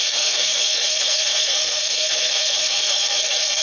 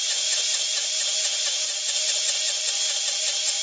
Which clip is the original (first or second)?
second